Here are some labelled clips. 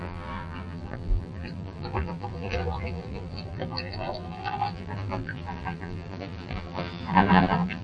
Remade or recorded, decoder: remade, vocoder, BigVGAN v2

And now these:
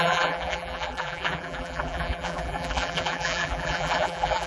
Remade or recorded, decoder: remade, vocoder, BigVGAN v2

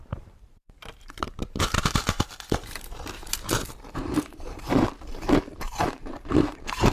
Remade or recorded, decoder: remade, vocoder, BigVGAN v2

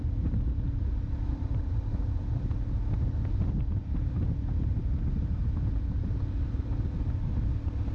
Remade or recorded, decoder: recorded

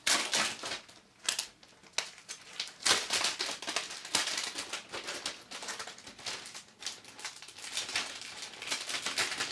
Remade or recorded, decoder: recorded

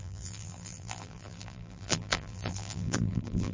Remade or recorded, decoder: remade, vocoder, BigVGAN v2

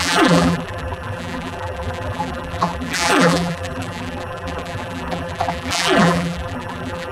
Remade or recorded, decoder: remade, vocoder, BigVGAN v2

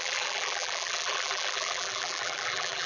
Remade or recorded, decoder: remade, vocoder, BigVGAN v2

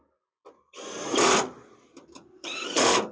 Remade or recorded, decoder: recorded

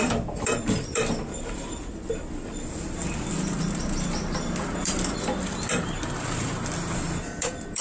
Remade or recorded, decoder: remade, vocoder, BigVGAN v2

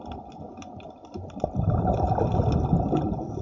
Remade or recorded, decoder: remade, vocoder, BigVGAN v2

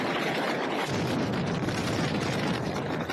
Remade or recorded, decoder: remade, vocoder, BigVGAN v2